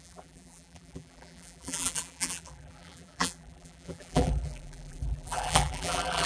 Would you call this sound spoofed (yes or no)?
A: yes